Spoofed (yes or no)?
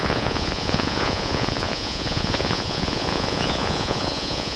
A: yes